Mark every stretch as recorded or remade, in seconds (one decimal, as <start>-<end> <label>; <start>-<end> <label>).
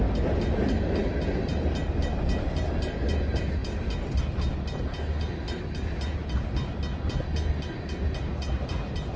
0.0-9.2 recorded